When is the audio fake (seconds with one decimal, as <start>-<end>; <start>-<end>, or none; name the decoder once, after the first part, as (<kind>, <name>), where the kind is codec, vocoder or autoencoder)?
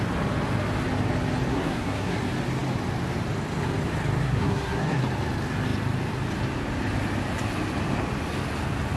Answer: 1.5-2.2 (codec, SNAC); 4.2-5.0